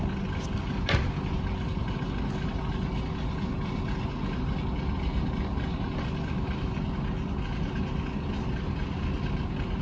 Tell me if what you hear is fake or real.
real